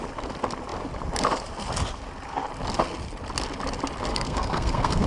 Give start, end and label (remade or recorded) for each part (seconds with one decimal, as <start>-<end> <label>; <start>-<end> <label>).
0.0-4.1 recorded; 4.1-5.1 remade

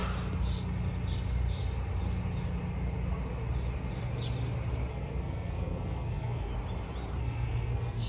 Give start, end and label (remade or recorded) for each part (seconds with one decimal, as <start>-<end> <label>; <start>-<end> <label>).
0.0-4.9 recorded; 4.9-6.5 remade; 6.5-7.2 recorded; 7.2-8.1 remade

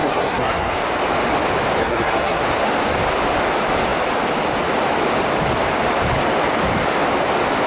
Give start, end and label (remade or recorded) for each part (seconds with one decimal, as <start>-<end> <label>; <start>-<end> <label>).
0.0-0.7 remade; 0.7-1.8 recorded; 1.8-2.4 remade; 2.4-7.7 recorded

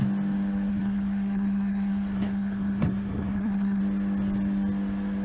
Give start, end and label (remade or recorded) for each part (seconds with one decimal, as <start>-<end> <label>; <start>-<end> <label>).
0.0-0.7 recorded; 0.7-3.8 remade; 3.8-5.2 recorded

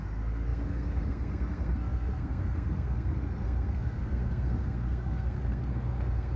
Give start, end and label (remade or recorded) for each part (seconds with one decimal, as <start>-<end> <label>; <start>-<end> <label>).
0.0-6.4 remade